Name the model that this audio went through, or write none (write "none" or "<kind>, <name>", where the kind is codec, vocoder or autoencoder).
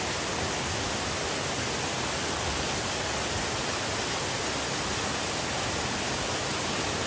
none